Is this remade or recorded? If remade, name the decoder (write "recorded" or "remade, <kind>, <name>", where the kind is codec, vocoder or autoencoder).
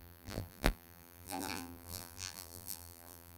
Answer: remade, vocoder, BigVGAN v2